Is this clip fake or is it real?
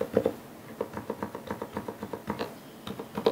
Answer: real